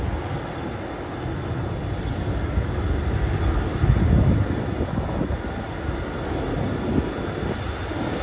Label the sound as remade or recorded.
recorded